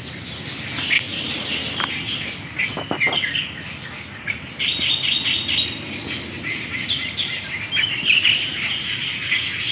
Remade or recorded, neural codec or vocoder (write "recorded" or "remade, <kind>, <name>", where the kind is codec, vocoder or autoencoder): recorded